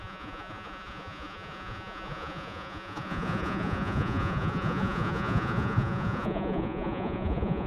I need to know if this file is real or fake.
fake